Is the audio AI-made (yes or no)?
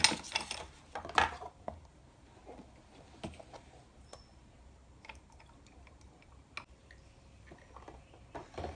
no